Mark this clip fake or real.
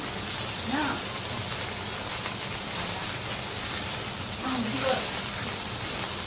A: real